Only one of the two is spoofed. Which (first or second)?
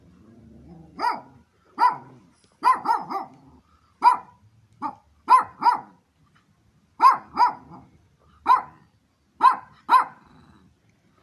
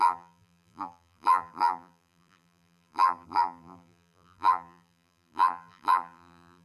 second